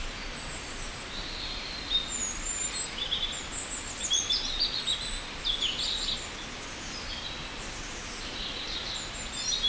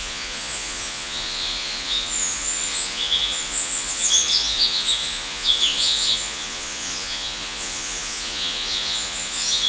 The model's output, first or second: second